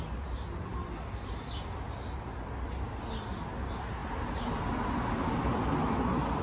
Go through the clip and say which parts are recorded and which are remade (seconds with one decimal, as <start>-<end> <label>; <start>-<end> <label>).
0.0-6.4 recorded